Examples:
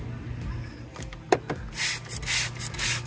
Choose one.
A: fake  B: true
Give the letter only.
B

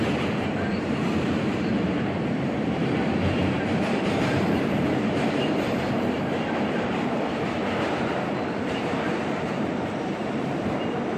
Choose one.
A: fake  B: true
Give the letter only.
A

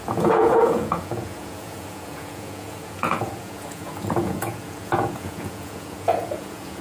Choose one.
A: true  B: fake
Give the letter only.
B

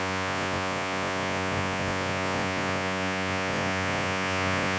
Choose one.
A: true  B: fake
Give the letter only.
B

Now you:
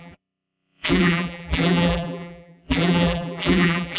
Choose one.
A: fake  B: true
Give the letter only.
A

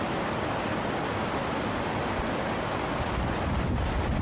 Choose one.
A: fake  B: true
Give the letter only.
B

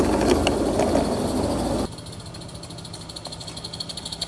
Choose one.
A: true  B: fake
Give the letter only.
A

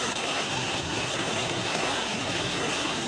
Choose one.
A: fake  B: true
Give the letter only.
A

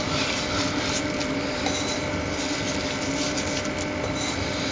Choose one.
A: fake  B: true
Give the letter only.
B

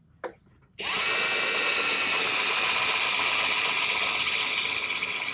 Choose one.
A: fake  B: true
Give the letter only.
B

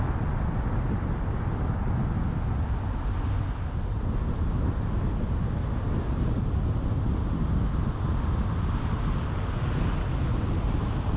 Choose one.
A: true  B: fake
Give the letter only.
A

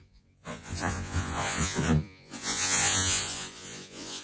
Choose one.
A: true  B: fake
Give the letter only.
B